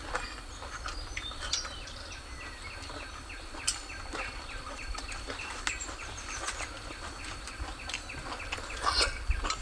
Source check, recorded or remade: recorded